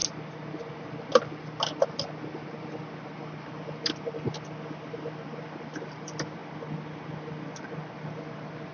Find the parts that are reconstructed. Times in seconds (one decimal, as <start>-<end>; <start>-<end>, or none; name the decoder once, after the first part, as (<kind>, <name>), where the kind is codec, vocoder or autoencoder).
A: none